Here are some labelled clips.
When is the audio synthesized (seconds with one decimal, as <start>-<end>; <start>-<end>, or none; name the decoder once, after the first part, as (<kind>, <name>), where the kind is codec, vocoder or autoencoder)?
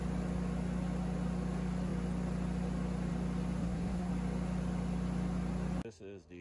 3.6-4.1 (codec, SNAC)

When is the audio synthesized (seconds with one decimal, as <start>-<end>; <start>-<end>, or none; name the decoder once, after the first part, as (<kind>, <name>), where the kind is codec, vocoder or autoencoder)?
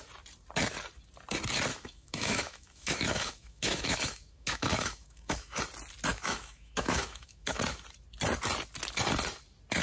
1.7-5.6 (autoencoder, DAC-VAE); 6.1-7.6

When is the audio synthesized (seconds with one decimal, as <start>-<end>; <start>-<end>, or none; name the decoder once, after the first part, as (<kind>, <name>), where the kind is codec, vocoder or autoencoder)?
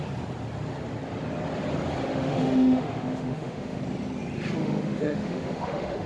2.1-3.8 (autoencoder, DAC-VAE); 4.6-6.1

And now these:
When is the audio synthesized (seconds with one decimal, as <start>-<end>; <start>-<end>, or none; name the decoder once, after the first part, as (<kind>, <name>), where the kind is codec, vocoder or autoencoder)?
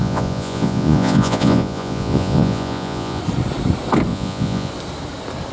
0.0-3.2 (vocoder, Vocos); 4.1-4.7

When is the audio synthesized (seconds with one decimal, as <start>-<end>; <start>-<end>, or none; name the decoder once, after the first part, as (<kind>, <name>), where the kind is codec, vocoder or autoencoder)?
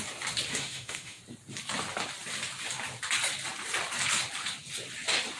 0.5-1.2 (autoencoder, DAC-VAE)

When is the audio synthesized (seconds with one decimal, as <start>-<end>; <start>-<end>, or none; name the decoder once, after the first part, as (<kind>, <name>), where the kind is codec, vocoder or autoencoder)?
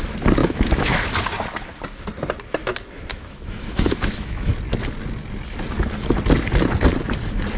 0.4-1.0 (autoencoder, DAC-VAE); 3.1-4.5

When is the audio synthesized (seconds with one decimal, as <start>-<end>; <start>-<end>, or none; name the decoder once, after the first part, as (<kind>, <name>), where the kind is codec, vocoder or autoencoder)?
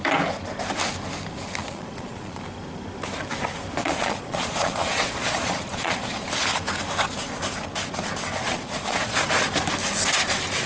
1.6-2.4 (vocoder, Vocos); 3.8-6.3; 8.4-9.2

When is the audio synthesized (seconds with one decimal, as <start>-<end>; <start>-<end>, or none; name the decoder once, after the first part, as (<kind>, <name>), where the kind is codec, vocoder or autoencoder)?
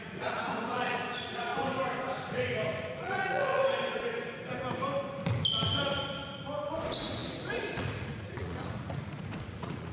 0.0-1.5 (vocoder, Vocos); 2.9-3.6; 6.8-9.9